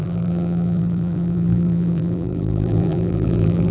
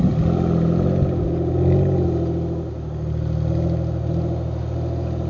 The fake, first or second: first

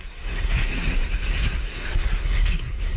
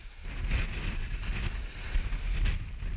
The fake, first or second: first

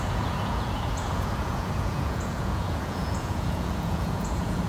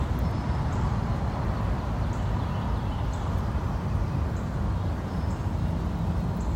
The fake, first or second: first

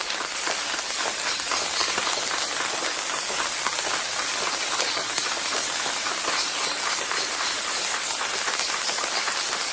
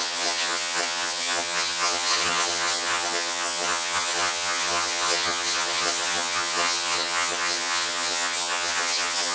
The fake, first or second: second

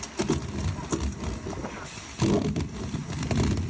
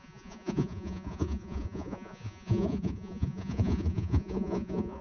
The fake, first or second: second